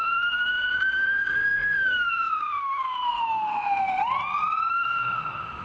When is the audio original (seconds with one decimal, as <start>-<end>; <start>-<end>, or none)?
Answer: 4.0-4.7